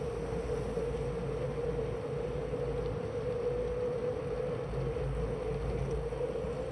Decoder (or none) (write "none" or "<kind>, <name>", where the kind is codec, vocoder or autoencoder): none